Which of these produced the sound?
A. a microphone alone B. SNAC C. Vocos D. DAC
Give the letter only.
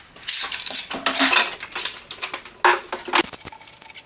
A